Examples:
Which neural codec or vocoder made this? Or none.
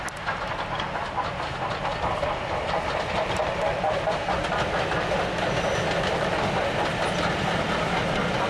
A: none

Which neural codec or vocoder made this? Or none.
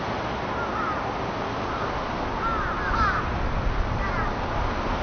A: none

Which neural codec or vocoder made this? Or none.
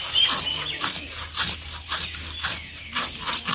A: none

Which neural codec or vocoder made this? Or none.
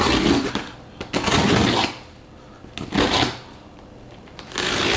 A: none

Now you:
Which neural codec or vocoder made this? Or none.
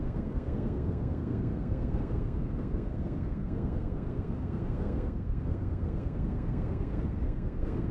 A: codec, SNAC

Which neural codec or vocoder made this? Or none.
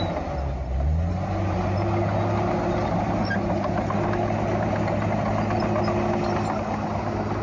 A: none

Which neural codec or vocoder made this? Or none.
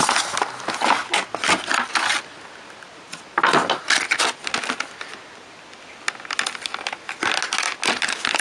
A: none